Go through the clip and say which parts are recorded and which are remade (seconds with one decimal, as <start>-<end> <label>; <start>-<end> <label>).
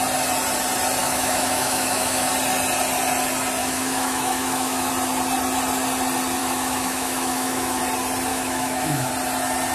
0.0-1.0 recorded; 1.0-2.3 remade; 2.3-3.6 recorded; 3.6-4.9 remade; 4.9-6.4 recorded; 6.4-7.8 remade; 7.8-8.3 recorded; 8.3-9.1 remade; 9.1-9.7 recorded